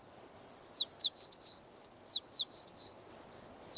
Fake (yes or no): no